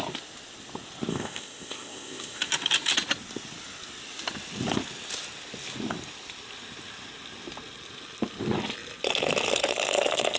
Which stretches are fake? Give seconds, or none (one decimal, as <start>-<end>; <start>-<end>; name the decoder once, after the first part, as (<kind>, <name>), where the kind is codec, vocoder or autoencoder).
1.1-2.5 (codec, ZipCodec)